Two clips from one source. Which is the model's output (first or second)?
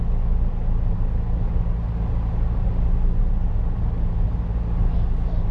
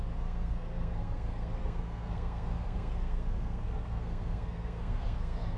second